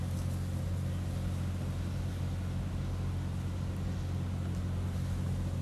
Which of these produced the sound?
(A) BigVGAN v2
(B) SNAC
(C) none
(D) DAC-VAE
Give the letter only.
C